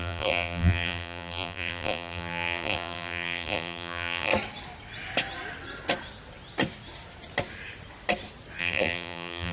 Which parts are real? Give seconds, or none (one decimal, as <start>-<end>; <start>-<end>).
4.3-8.6